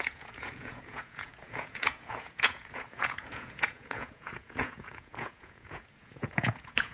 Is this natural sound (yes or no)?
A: no